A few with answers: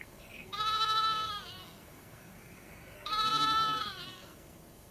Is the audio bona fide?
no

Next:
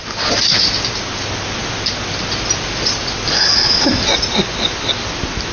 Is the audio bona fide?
yes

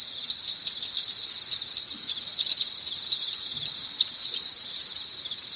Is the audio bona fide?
yes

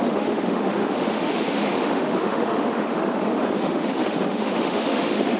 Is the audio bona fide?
no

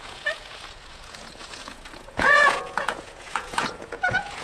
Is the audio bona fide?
no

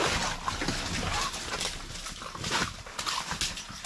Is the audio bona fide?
yes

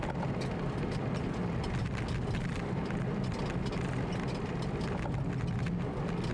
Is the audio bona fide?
yes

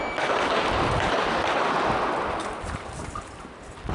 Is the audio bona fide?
yes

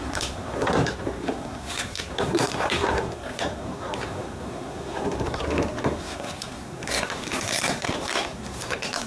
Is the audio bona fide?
no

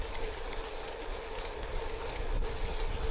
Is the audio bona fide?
yes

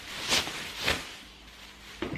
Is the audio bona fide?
yes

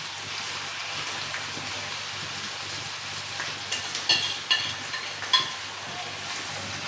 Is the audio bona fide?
yes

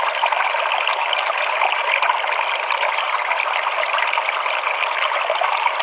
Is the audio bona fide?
yes